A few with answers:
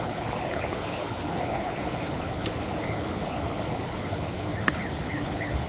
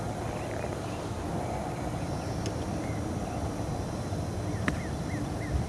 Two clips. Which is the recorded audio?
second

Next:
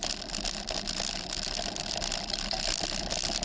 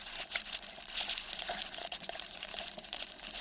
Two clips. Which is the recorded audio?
first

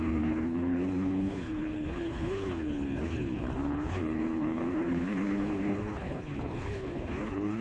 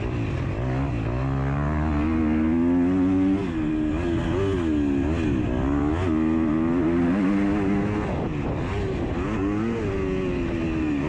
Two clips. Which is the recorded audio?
second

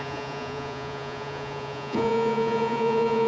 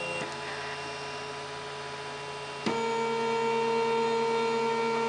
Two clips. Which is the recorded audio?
second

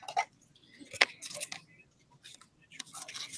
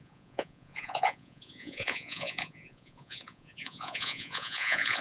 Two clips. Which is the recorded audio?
first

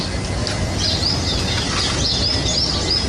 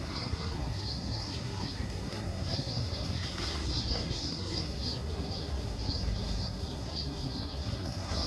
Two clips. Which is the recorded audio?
first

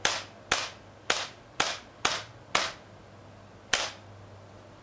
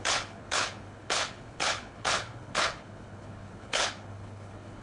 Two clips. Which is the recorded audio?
first